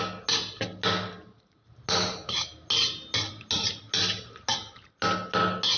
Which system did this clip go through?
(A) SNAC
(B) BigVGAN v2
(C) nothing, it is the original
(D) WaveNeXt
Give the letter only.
C